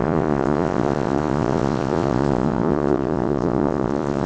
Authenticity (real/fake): fake